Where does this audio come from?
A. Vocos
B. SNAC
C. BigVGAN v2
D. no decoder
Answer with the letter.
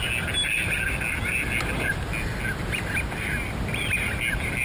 D